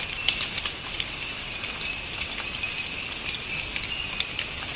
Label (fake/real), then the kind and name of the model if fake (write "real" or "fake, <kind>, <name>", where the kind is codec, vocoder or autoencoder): real